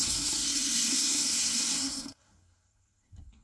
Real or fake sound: fake